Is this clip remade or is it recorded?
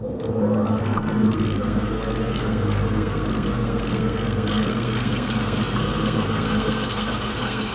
remade